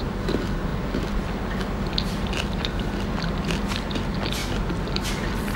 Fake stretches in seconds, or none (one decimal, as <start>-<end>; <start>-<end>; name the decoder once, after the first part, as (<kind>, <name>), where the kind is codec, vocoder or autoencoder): none

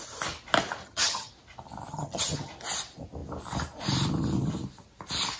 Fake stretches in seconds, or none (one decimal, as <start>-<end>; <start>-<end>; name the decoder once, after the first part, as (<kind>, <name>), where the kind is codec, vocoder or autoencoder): 0.8-1.3 (vocoder, HiFi-GAN); 1.9-2.5

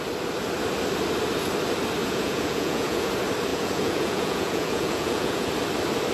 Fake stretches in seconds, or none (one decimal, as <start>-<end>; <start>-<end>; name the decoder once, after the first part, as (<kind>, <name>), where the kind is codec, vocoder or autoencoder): 2.0-3.1 (vocoder, Vocos); 3.5-5.5

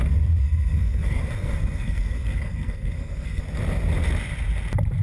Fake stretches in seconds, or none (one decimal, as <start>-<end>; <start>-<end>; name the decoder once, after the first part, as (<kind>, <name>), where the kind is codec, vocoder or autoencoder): 0.4-3.4 (codec, SNAC)

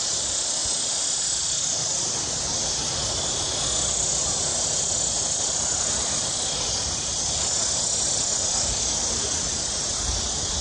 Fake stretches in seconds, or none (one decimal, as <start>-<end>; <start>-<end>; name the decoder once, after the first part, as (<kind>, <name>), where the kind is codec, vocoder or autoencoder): 1.8-3.2 (vocoder, BigVGAN v2)

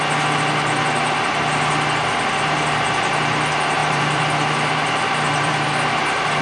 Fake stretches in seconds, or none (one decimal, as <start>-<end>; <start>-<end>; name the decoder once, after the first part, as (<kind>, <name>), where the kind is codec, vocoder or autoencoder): 3.8-5.7 (vocoder, BigVGAN v2)